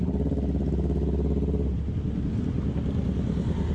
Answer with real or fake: real